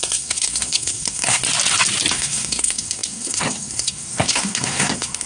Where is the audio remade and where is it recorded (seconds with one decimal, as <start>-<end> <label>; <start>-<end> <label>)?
0.0-1.4 remade; 1.4-2.1 recorded; 2.1-5.3 remade